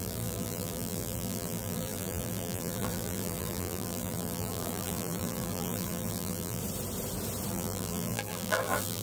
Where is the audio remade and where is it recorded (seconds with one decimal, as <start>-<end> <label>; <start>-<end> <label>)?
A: 0.0-6.6 remade; 6.6-7.5 recorded; 7.5-9.0 remade